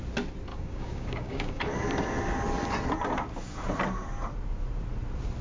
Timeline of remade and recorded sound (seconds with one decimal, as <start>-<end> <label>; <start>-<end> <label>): 0.0-0.5 recorded; 0.5-1.6 remade; 1.6-5.4 recorded